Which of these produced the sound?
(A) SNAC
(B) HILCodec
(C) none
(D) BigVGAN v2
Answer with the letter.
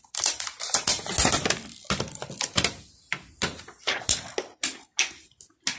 C